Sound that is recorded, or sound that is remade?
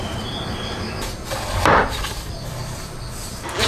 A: recorded